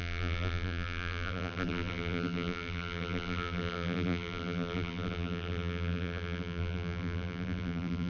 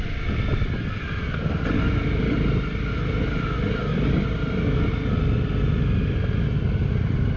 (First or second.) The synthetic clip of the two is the first